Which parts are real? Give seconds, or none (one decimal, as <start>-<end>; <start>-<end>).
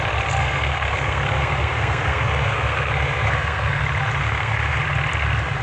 0.0-0.4; 3.8-4.2; 4.8-5.6